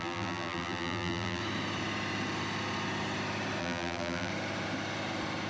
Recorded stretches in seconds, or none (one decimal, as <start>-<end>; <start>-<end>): 1.4-3.6; 4.3-5.5